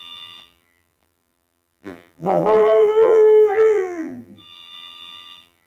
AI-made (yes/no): yes